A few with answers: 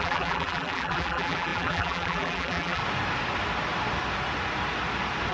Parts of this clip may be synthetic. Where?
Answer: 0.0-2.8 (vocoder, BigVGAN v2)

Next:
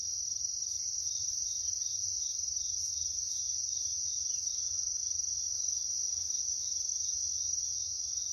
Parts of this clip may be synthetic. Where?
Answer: 0.0-3.6 (vocoder, BigVGAN v2); 4.5-5.0; 6.4-6.9; 7.6-8.3

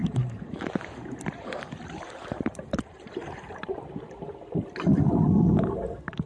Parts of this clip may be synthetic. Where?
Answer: 0.0-3.7 (vocoder, BigVGAN v2)

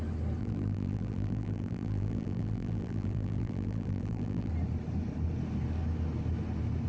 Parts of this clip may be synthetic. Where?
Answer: 0.4-4.5 (vocoder, BigVGAN v2)